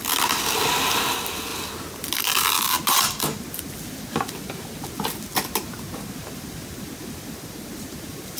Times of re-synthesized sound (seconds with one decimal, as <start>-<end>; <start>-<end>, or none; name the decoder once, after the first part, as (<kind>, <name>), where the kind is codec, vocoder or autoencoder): none

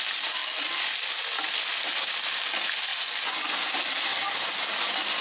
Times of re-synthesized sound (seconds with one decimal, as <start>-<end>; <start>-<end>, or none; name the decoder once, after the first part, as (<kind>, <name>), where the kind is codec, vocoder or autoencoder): none

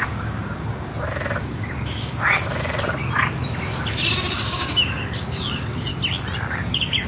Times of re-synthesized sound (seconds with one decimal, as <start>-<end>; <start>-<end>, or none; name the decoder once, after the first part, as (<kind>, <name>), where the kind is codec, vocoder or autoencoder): 0.0-0.9 (codec, DAC); 1.4-2.5; 4.3-5.9; 6.5-7.1

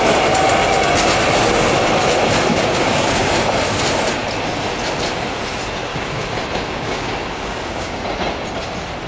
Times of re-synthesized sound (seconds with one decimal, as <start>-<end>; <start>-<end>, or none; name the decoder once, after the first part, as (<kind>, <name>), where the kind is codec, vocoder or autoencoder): 2.5-3.3 (codec, DAC); 5.9-8.0

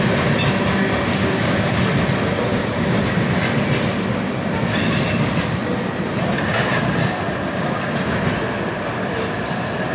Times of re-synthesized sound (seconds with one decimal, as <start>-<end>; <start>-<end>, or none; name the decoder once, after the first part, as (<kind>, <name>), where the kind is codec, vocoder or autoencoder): 1.1-1.8 (codec, DAC); 2.5-3.0; 7.5-8.3

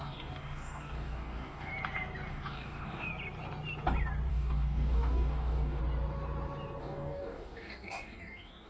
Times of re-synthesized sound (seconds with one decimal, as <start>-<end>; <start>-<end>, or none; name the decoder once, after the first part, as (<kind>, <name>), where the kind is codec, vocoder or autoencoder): 0.0-1.7 (codec, DAC); 2.3-3.1; 4.3-5.8; 6.8-8.7

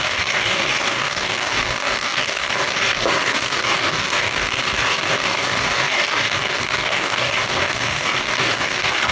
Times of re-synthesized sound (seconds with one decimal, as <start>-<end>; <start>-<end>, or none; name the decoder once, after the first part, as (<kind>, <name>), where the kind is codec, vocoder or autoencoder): 0.0-9.1 (codec, DAC)

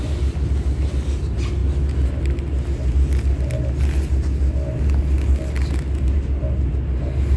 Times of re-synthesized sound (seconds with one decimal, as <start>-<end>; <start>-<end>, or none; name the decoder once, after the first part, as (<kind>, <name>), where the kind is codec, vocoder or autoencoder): none